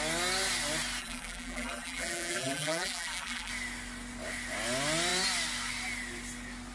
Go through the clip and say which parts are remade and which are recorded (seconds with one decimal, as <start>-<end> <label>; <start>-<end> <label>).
0.0-1.0 recorded; 1.0-3.5 remade; 3.5-6.7 recorded